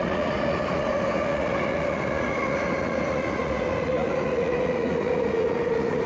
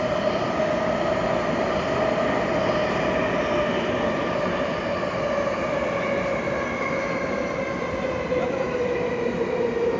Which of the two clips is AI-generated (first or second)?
first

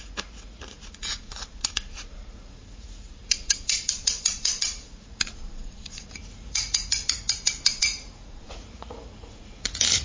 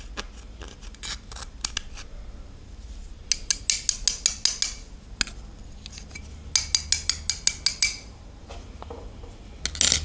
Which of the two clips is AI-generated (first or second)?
first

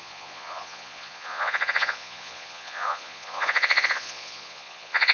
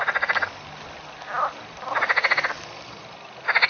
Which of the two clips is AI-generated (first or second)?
first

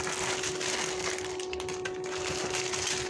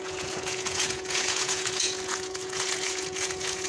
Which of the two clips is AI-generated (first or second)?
second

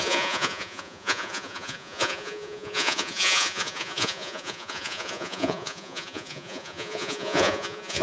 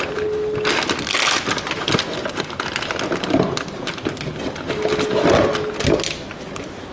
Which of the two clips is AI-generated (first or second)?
first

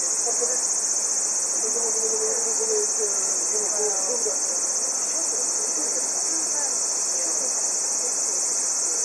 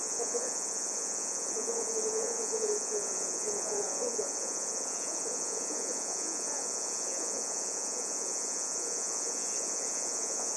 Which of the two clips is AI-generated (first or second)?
second